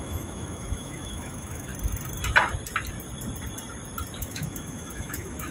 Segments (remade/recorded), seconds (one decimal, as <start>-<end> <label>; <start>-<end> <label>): 0.0-1.7 remade; 1.7-4.2 recorded; 4.2-5.5 remade